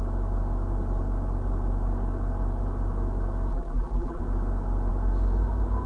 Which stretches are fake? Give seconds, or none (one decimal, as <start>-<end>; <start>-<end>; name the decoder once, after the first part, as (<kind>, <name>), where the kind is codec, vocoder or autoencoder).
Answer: 3.5-4.2 (vocoder, BigVGAN v2)